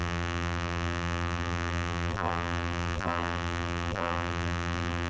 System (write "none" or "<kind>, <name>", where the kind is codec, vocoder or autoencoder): vocoder, BigVGAN v2